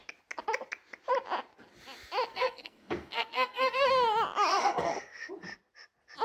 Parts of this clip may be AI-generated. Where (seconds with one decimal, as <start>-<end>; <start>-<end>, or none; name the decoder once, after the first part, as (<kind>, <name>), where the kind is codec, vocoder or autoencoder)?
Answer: 2.3-3.9 (codec, SNAC); 4.5-5.3